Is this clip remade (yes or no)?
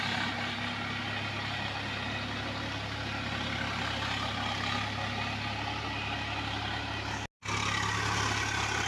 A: no